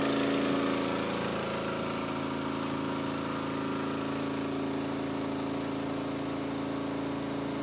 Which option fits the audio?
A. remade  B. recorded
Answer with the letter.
B